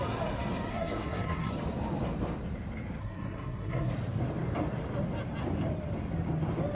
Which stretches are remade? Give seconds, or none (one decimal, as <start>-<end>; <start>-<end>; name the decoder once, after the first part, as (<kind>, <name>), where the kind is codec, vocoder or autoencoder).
0.7-1.5 (codec, SNAC); 3.0-3.9